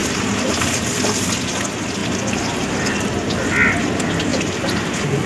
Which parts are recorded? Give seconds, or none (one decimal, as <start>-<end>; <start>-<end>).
0.9-2.0; 3.5-4.3